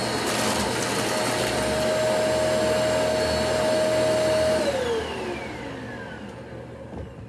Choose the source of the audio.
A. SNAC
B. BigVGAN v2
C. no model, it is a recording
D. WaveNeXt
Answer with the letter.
C